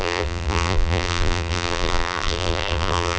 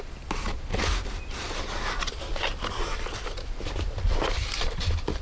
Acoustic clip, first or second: second